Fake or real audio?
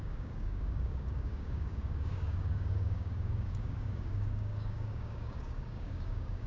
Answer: fake